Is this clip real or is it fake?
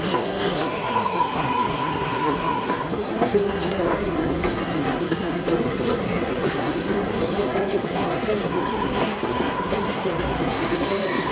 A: fake